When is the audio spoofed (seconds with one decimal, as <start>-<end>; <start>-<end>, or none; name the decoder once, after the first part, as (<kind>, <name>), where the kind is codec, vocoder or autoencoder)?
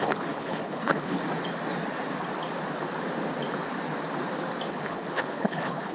0.0-1.2 (codec, HILCodec); 4.7-5.9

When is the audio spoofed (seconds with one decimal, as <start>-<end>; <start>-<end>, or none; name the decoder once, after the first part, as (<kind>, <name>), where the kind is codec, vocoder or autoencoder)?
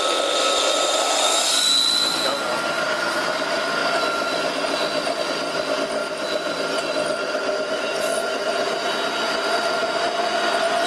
none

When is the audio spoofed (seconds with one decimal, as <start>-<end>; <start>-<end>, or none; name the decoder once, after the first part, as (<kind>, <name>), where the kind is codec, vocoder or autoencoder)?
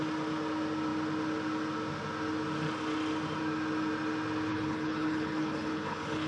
4.5-6.3 (codec, HILCodec)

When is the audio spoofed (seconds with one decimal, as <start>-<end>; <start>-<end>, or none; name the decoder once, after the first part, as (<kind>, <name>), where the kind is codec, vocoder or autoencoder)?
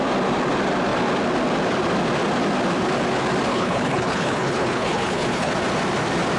3.5-5.5 (codec, HILCodec)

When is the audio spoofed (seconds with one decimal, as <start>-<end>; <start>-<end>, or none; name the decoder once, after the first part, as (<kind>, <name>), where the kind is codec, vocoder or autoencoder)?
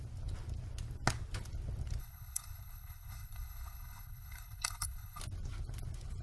2.0-5.2 (codec, HILCodec)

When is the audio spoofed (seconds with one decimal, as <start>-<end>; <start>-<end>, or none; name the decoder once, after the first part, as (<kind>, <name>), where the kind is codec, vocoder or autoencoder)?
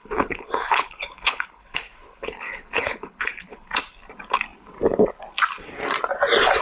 0.0-3.7 (codec, HILCodec)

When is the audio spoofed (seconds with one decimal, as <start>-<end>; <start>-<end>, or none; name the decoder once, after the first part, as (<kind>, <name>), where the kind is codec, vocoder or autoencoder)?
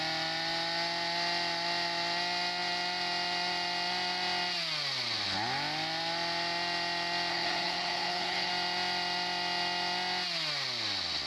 7.3-8.5 (codec, HILCodec)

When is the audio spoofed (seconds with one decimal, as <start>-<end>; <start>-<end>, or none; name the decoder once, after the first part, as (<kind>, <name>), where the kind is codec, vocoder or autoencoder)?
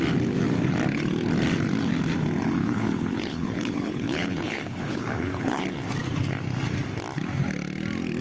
2.6-5.6 (codec, HILCodec)